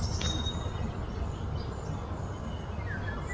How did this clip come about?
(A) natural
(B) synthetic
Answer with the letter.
A